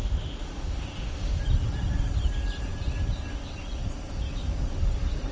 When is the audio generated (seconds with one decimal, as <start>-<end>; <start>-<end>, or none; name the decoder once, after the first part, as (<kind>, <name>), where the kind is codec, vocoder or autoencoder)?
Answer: 0.0-1.4 (autoencoder, DAC-VAE)